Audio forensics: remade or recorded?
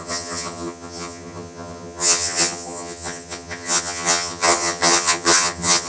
remade